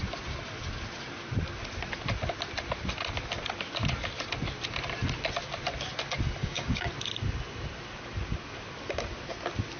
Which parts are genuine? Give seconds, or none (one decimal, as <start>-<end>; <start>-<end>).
0.0-6.4; 6.9-9.8